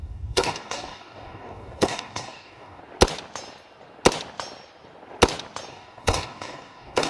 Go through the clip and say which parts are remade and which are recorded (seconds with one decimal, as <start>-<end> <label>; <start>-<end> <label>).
0.0-2.8 remade; 2.8-5.7 recorded; 5.7-7.1 remade